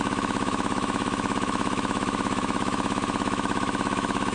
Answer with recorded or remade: remade